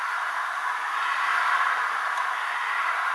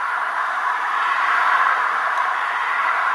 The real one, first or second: first